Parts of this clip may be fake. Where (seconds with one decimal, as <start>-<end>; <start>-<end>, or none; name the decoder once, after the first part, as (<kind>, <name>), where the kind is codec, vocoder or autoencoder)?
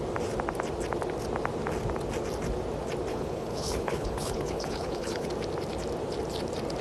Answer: 3.1-5.3 (codec, HILCodec)